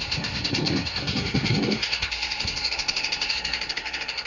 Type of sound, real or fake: fake